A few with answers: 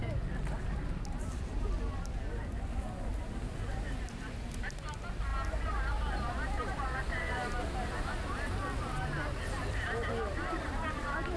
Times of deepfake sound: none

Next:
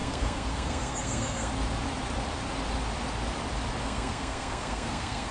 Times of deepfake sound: 0.0-1.5 (codec, SNAC); 3.8-5.3

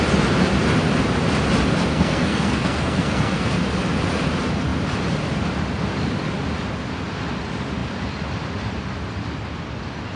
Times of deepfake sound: 1.9-3.5 (codec, SNAC)

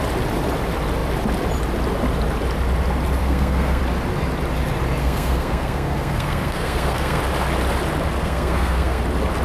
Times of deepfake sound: 3.2-3.8 (codec, SNAC); 5.0-7.2; 8.2-9.0

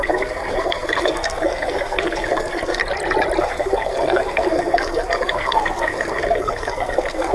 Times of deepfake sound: 0.0-2.8 (codec, SNAC); 3.4-7.3